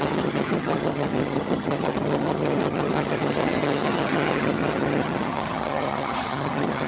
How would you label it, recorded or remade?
remade